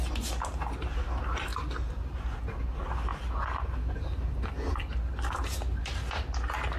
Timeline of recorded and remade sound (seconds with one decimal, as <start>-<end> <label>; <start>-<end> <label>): 0.0-6.8 recorded